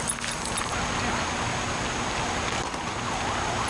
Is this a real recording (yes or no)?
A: yes